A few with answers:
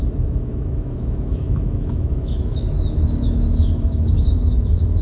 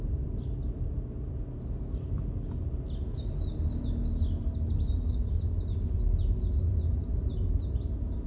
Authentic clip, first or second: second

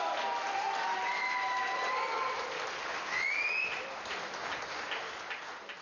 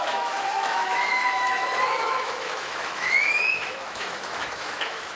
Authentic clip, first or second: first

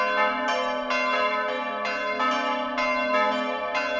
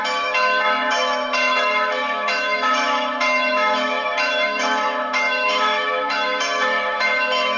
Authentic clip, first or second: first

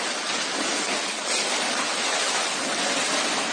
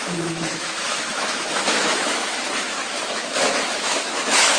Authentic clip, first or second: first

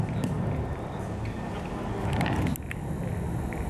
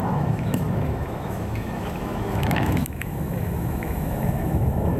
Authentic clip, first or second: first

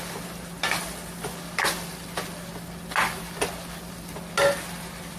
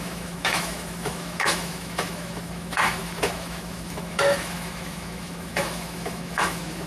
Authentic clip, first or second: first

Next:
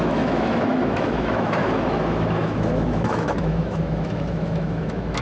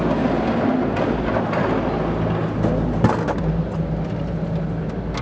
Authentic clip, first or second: second